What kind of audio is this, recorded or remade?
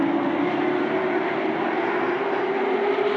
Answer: recorded